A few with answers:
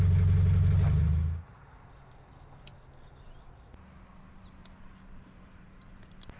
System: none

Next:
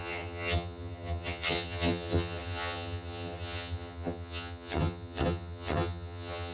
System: vocoder, HiFi-GAN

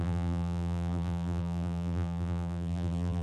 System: vocoder, BigVGAN v2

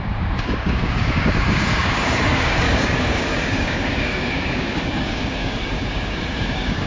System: codec, DAC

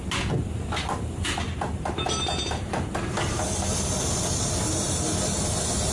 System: none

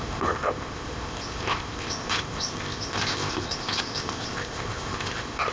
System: codec, ZipCodec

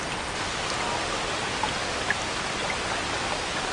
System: none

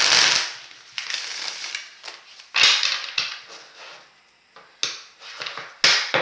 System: none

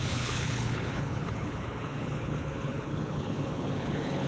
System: codec, HILCodec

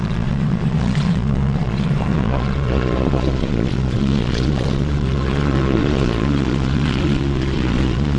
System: vocoder, Vocos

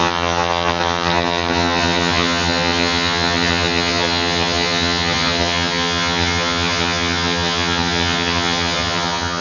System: vocoder, HiFi-GAN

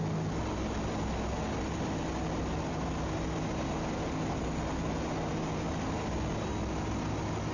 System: none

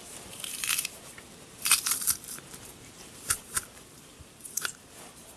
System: vocoder, BigVGAN v2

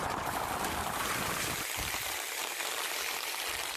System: none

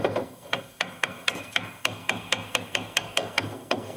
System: codec, SNAC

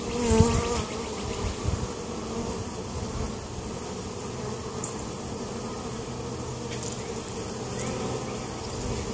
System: none